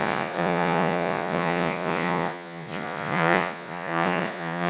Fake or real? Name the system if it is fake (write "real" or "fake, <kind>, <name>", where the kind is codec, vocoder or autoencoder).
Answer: fake, vocoder, Vocos